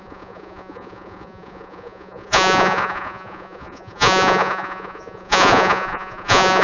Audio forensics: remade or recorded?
remade